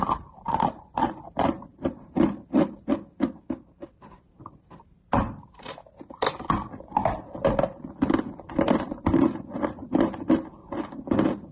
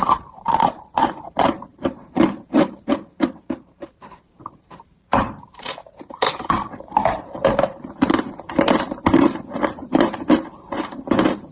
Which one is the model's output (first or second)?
second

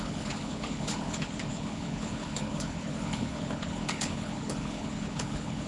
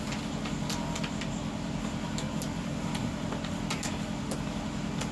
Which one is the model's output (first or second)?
first